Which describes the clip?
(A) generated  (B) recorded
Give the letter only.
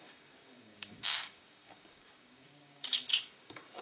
A